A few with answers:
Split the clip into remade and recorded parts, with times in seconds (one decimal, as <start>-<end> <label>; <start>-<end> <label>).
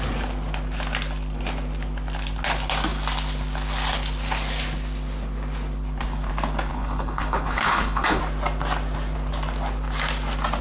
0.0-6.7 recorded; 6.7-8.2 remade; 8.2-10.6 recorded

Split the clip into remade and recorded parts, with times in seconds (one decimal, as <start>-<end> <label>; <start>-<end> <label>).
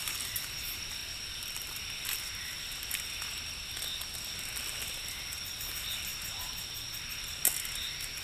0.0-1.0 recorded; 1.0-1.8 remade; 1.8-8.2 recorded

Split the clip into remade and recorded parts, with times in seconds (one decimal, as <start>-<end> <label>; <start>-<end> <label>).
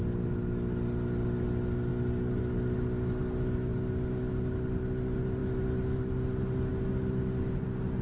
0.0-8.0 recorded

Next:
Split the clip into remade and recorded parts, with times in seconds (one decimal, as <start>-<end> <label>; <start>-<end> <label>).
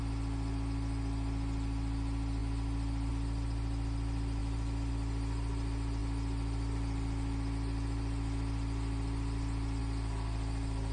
0.0-10.9 recorded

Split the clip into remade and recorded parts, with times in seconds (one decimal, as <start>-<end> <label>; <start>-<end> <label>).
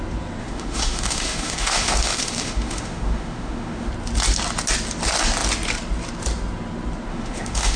0.0-0.4 recorded; 0.4-3.9 remade; 3.9-7.1 recorded; 7.1-7.8 remade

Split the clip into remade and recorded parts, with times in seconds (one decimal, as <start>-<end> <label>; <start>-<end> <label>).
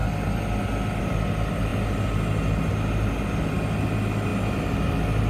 0.0-5.3 recorded